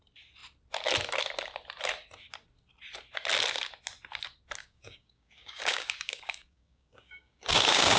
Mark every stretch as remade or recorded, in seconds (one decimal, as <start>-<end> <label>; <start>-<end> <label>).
0.0-4.6 recorded; 4.6-8.0 remade